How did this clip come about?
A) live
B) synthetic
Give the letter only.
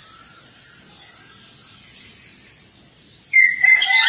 A